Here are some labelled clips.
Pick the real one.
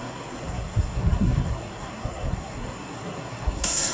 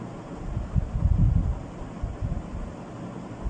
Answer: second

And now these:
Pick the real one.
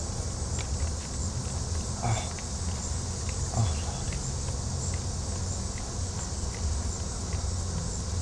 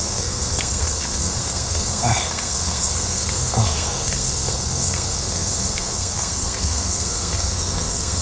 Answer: first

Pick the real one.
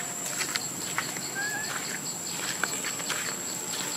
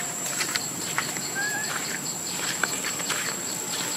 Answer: first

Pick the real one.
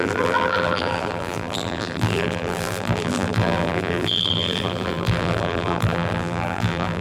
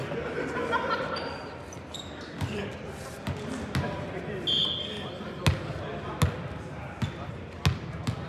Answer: second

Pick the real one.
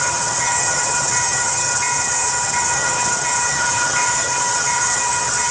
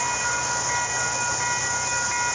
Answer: second